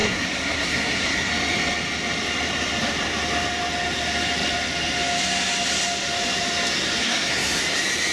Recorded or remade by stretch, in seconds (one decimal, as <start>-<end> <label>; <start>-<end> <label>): 0.0-1.3 remade; 1.3-7.0 recorded; 7.0-7.6 remade; 7.6-8.1 recorded